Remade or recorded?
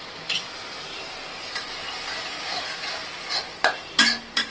recorded